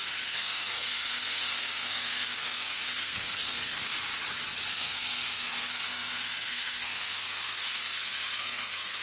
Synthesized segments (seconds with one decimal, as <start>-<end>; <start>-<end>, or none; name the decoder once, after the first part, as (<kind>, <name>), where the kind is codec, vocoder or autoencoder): 0.0-4.1 (codec, SNAC); 4.7-9.0